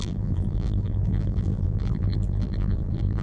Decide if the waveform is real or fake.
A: fake